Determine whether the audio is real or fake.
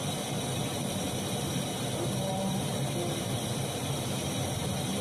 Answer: real